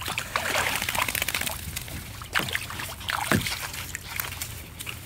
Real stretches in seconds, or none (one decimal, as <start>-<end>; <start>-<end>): 1.2-4.3